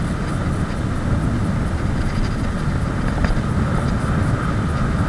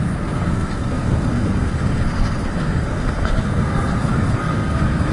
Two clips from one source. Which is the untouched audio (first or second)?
first